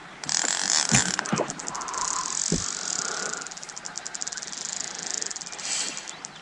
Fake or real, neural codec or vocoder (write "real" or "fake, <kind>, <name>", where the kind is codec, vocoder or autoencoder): real